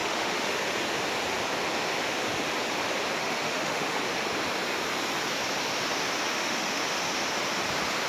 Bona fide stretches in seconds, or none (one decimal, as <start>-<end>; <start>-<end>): 0.6-3.2; 4.0-6.3; 6.8-8.1